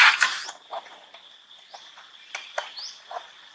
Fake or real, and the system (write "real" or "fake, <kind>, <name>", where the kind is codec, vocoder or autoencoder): real